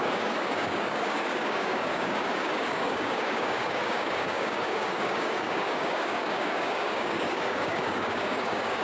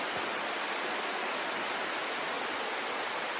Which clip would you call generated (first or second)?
first